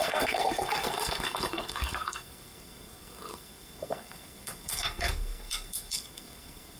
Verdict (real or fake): fake